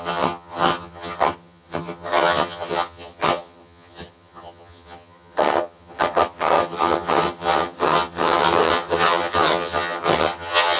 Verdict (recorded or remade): remade